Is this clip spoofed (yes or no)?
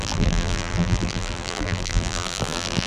yes